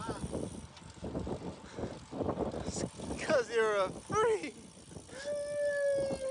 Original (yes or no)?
yes